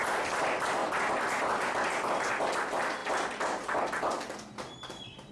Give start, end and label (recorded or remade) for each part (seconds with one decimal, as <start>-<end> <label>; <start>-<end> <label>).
0.0-5.3 recorded